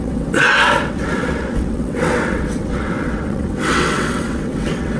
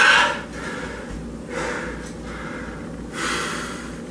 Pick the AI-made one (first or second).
first